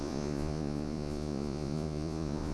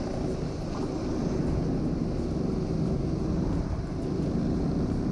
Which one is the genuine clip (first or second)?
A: second